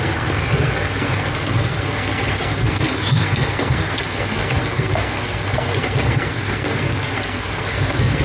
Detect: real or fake fake